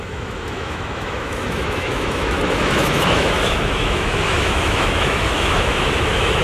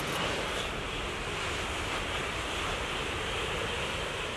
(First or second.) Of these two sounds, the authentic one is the second